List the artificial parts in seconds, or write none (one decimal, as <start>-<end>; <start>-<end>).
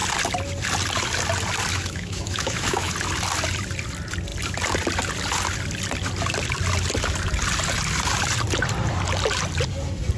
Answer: 1.7-2.9